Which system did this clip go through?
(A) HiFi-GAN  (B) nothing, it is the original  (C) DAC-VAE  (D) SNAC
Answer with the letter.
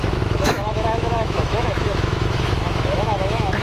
C